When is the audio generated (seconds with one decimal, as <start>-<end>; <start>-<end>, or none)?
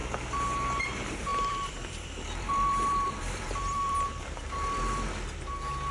1.3-4.8